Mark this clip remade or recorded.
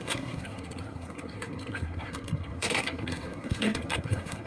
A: remade